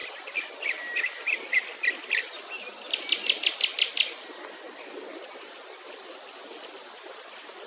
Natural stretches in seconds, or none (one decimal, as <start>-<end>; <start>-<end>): 0.0-7.7